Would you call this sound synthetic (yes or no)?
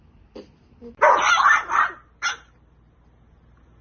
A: no